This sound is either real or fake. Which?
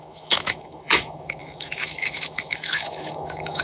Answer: fake